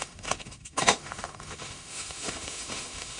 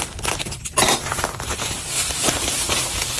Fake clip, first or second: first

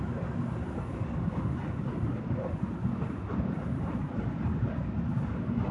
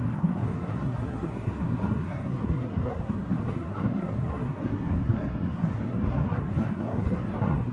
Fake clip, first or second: second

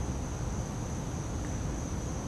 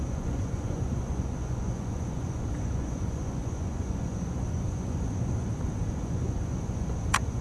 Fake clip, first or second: second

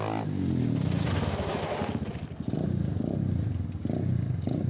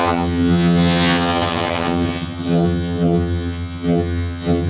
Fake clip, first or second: second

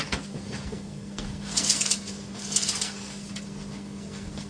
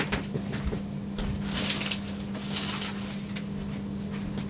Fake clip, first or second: first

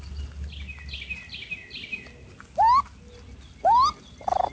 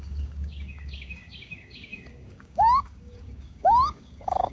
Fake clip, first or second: second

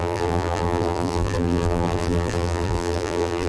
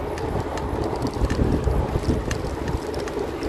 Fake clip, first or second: first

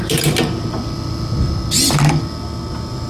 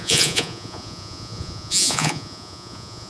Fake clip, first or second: second